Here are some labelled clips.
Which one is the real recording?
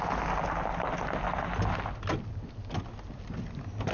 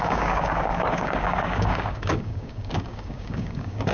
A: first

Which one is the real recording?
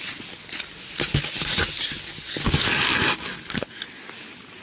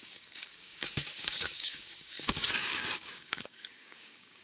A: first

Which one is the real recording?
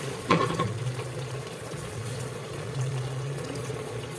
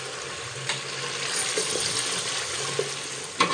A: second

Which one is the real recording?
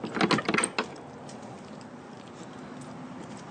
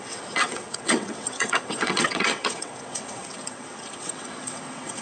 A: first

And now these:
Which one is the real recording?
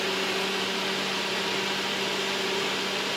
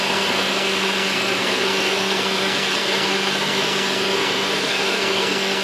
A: first